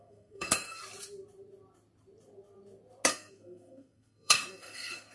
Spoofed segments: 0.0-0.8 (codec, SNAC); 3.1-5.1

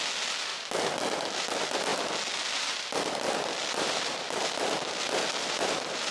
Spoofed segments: none

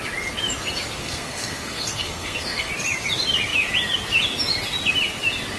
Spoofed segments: 1.0-2.7 (codec, SNAC)

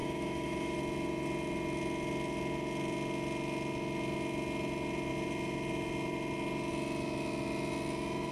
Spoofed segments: 0.0-0.8 (autoencoder, DAC-VAE)